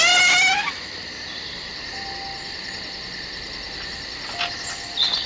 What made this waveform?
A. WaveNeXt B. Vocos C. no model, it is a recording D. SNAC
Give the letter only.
C